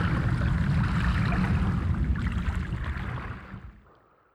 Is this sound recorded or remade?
recorded